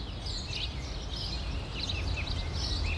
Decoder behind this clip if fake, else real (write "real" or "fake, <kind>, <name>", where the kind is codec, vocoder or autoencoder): real